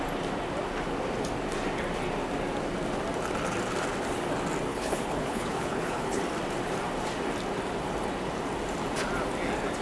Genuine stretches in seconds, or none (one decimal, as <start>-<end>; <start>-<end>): 0.0-4.7; 6.2-9.8